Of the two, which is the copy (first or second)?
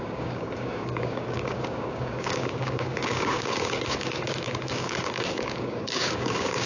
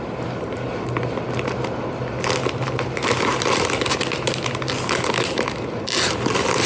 first